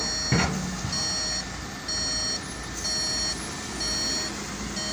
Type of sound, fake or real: real